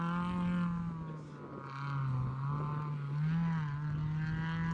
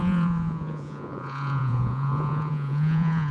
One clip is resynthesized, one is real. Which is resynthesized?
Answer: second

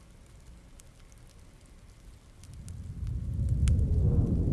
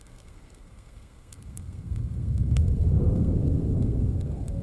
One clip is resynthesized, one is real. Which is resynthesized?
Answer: second